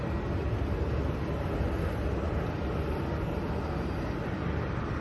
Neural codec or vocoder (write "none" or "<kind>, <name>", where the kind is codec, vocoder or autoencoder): none